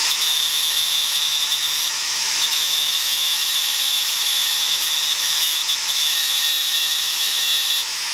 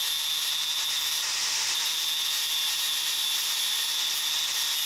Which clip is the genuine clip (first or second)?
second